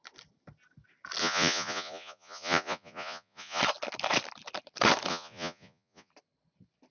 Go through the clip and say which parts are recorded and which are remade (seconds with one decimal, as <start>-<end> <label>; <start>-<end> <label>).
0.0-1.2 recorded; 1.2-3.6 remade; 3.6-5.1 recorded; 5.1-6.1 remade; 6.1-6.9 recorded